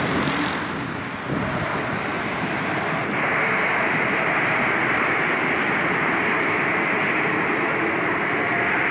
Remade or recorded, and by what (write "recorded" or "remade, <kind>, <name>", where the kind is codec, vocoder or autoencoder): recorded